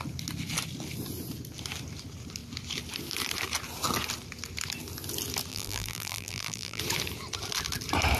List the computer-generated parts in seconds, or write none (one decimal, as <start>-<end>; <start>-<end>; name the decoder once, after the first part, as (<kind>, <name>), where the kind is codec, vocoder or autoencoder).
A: 5.5-6.8 (vocoder, BigVGAN v2)